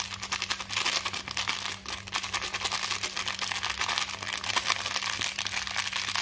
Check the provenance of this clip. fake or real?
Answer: real